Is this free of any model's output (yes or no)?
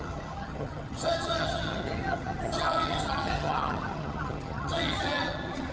no